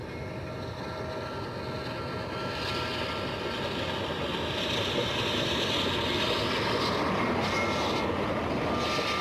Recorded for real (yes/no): yes